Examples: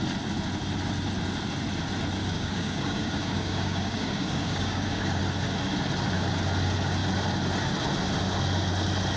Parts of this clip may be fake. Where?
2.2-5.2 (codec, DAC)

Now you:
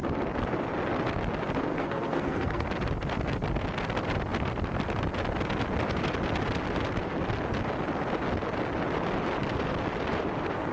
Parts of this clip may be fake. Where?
1.7-2.7 (codec, SNAC)

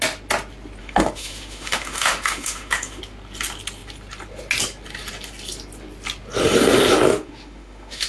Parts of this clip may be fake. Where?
0.8-3.0 (autoencoder, DAC-VAE); 7.1-8.1

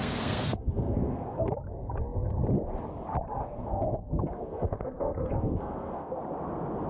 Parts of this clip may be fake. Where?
0.0-1.5 (codec, SNAC); 3.4-6.1

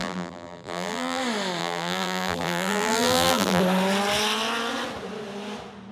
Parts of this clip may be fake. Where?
0.0-1.2 (vocoder, BigVGAN v2); 1.6-3.6

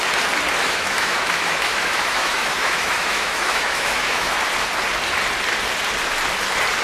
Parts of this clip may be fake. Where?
0.6-4.4 (autoencoder, DAC-VAE)